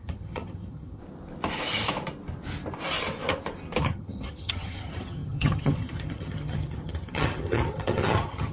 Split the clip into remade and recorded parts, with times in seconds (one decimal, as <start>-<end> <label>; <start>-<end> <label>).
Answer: 0.0-1.0 remade; 1.0-3.8 recorded; 3.8-8.5 remade